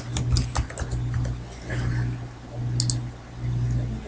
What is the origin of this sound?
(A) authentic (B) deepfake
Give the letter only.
A